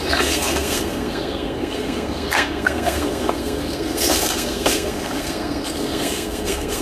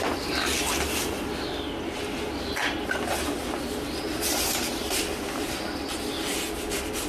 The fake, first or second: first